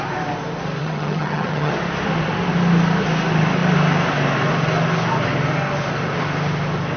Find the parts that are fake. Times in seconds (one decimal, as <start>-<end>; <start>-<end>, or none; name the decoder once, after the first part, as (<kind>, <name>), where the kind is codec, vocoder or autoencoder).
0.8-1.7 (vocoder, HiFi-GAN)